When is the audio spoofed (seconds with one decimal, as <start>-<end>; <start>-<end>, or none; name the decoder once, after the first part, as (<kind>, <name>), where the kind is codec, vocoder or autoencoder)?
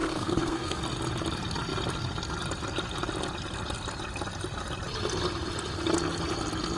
0.0-0.8 (codec, SNAC)